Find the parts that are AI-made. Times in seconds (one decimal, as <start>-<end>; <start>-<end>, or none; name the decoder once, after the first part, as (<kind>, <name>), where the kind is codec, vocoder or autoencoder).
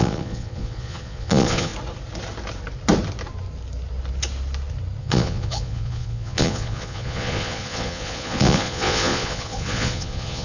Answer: 0.0-1.7 (vocoder, Vocos); 5.0-10.4